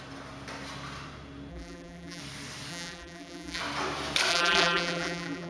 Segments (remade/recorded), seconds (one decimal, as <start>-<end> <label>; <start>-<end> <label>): 0.0-1.5 recorded; 1.5-2.2 remade; 2.2-2.7 recorded; 2.7-3.6 remade; 3.6-4.3 recorded; 4.3-5.5 remade